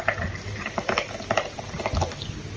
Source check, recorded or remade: recorded